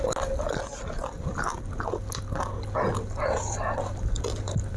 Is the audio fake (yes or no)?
no